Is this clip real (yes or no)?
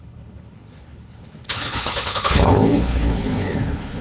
no